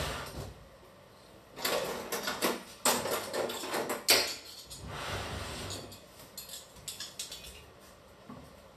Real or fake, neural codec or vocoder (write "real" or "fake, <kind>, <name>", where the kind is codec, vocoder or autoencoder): real